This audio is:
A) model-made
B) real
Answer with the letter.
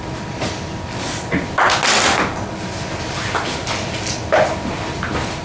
B